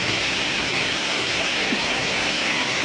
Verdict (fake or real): fake